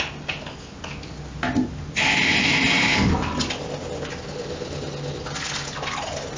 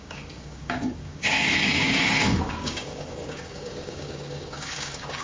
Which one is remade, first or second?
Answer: second